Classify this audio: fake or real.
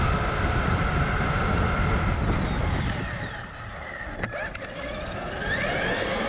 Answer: real